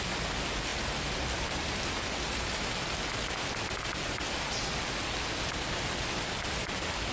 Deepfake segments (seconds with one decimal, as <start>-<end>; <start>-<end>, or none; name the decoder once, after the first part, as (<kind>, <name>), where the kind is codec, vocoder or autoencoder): none